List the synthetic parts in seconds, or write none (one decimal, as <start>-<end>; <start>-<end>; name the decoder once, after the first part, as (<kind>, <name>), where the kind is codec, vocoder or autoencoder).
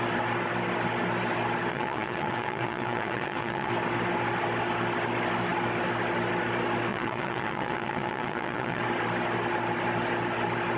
1.7-3.7 (vocoder, WaveNeXt); 6.9-8.8